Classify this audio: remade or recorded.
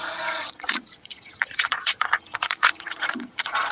remade